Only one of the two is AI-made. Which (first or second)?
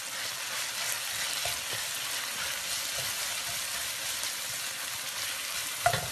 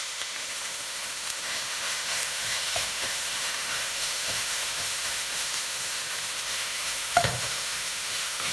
second